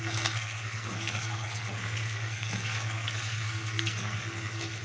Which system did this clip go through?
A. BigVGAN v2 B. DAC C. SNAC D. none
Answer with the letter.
C